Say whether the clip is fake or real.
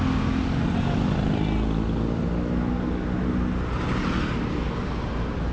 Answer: real